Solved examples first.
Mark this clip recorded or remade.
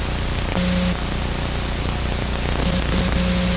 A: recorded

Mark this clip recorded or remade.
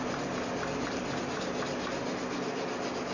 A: recorded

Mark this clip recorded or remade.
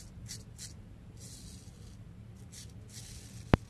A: recorded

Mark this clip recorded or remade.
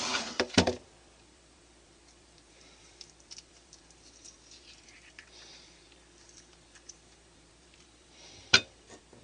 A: remade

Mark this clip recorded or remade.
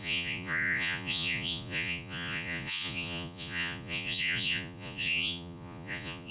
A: remade